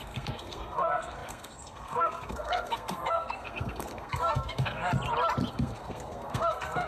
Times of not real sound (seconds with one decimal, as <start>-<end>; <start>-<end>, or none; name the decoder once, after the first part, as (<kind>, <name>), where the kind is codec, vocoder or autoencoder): 0.0-4.9 (codec, SNAC); 5.5-6.9